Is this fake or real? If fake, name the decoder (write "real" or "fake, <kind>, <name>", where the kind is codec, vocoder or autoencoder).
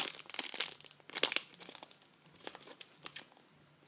real